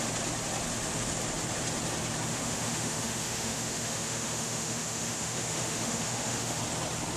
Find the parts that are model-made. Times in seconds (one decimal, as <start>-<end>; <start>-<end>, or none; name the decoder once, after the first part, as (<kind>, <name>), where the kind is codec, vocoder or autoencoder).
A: 2.3-6.6 (autoencoder, DAC-VAE)

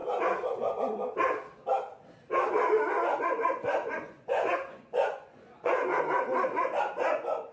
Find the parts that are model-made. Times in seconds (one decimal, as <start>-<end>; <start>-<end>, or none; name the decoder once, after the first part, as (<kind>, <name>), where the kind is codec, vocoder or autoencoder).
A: 3.2-5.8 (vocoder, Vocos); 7.1-7.5